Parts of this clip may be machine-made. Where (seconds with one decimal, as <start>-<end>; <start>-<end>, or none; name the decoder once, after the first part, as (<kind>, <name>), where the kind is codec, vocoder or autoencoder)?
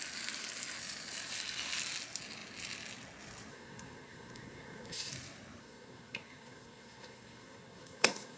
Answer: 3.5-5.1 (codec, SNAC); 5.6-8.4